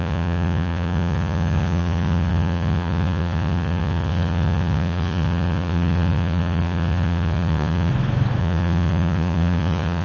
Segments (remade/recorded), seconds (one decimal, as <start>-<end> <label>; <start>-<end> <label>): 0.0-7.9 remade; 7.9-8.4 recorded; 8.4-10.0 remade